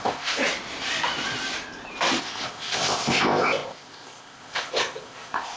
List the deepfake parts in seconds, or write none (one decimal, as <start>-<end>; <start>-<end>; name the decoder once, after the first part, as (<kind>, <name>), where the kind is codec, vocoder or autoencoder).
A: 0.0-0.4 (codec, ZipCodec); 2.2-5.6